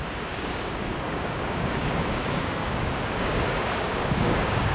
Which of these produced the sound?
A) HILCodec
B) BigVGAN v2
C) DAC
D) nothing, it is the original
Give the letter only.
C